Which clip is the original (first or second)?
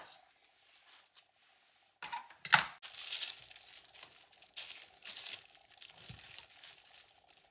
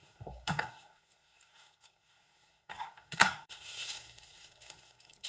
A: first